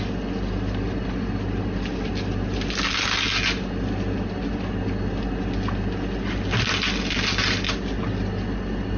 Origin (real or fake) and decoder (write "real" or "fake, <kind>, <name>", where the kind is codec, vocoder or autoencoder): real